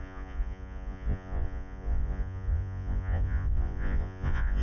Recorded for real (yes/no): no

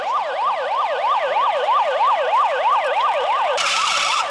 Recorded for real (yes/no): no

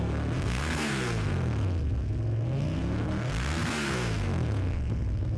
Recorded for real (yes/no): no